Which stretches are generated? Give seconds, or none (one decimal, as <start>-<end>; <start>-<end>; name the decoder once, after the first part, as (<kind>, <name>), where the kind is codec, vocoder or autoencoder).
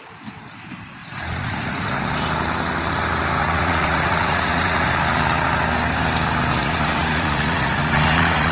1.0-2.0 (vocoder, Vocos); 3.4-4.9; 6.6-8.5